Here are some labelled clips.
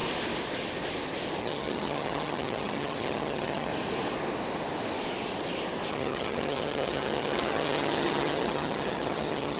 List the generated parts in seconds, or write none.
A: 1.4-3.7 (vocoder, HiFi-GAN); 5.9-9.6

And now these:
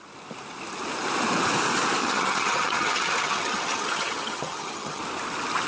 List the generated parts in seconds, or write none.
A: 2.0-5.0 (vocoder, HiFi-GAN)